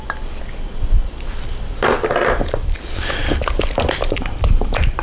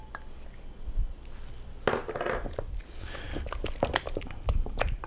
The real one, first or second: second